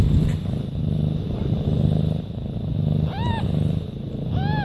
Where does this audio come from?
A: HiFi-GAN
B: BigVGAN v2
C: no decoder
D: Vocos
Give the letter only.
C